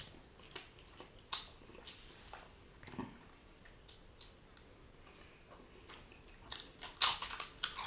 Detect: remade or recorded recorded